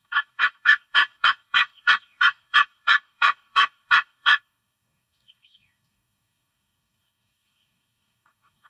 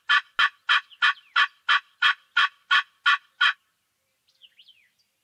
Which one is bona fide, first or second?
second